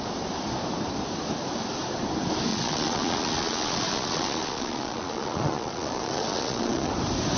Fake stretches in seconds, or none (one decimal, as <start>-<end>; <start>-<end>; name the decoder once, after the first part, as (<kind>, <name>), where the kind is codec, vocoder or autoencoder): 2.5-6.9 (vocoder, Vocos)